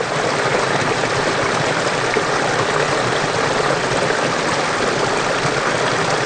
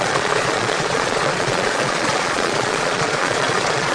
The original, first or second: first